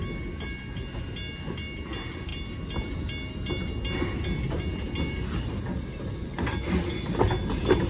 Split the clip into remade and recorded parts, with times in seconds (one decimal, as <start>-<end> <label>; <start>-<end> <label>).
0.0-7.9 recorded